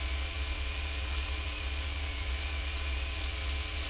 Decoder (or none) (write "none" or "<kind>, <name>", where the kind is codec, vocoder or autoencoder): vocoder, Vocos